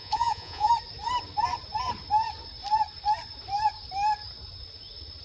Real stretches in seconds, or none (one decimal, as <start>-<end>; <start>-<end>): 0.7-5.2